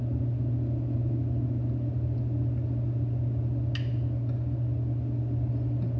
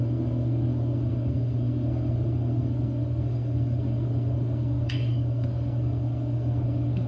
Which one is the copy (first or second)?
second